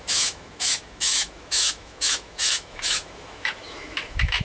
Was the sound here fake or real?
fake